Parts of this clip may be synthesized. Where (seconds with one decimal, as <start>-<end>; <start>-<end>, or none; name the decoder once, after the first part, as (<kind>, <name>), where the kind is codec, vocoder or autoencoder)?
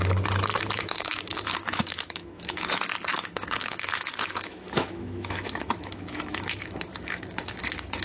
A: 0.5-2.7 (autoencoder, DAC-VAE); 3.1-7.6